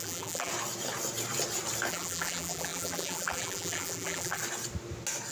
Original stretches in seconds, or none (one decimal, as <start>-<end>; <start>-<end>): 0.5-1.9; 4.4-5.3